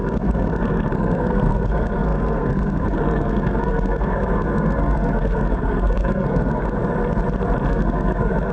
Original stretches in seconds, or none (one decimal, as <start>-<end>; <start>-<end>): 6.8-7.7